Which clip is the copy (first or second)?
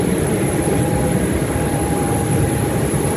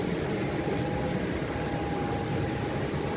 first